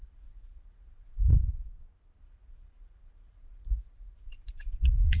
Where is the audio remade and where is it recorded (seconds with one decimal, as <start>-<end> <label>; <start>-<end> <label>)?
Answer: 0.0-1.3 remade; 1.3-2.2 recorded; 2.2-5.2 remade